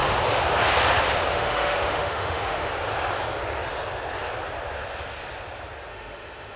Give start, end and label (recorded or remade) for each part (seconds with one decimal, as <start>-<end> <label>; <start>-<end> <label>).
0.0-1.3 recorded; 1.3-2.7 remade; 2.7-5.9 recorded; 5.9-6.6 remade